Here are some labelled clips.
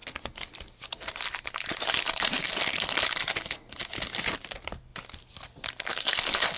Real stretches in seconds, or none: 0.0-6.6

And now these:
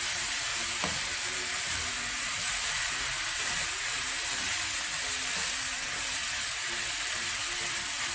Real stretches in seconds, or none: 0.0-0.5; 3.5-8.1

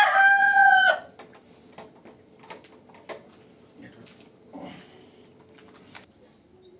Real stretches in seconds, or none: 0.0-0.4; 0.9-6.8

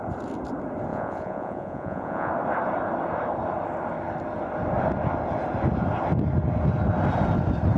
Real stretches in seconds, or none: 0.0-0.9; 2.3-7.8

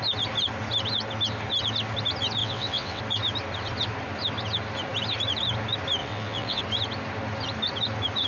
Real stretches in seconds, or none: 0.0-2.4; 3.0-6.0; 6.6-8.3

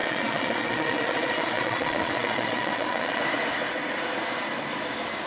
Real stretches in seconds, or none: 3.2-5.3